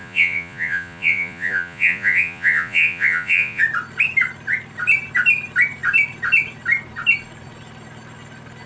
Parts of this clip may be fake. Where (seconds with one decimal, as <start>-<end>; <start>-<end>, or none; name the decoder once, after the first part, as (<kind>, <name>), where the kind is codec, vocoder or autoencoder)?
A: 0.0-3.6 (vocoder, Vocos)